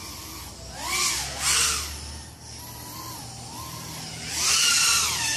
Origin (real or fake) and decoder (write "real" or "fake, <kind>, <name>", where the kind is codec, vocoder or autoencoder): fake, vocoder, BigVGAN v2